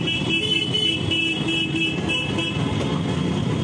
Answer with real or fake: real